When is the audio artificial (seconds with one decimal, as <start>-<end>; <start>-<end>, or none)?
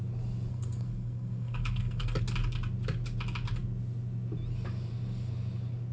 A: 0.5-2.2